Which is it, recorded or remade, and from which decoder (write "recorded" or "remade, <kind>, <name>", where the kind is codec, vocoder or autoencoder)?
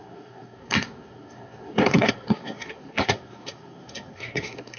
remade, codec, SNAC